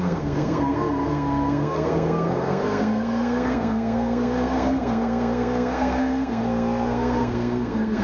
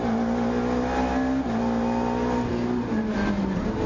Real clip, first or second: second